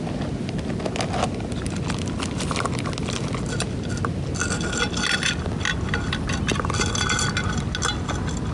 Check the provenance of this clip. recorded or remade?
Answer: recorded